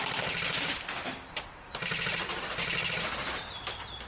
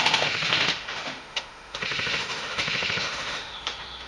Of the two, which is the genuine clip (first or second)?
first